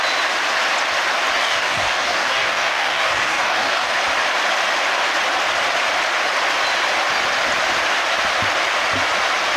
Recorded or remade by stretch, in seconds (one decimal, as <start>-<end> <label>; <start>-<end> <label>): 0.0-1.4 recorded; 1.4-3.9 remade; 3.9-9.6 recorded